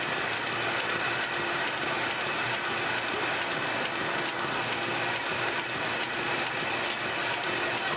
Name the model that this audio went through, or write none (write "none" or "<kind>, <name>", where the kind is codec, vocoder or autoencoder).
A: none